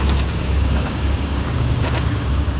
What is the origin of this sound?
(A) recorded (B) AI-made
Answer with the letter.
B